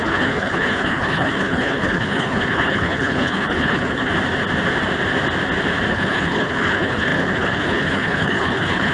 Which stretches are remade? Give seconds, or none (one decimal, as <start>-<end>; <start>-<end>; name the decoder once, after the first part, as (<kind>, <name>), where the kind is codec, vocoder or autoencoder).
0.0-4.1 (codec, HILCodec); 5.9-8.9